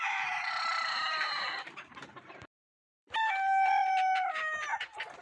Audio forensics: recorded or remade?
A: remade